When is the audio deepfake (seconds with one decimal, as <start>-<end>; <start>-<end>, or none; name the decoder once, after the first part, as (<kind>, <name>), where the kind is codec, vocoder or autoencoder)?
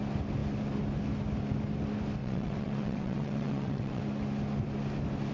2.2-4.0 (vocoder, WaveNeXt)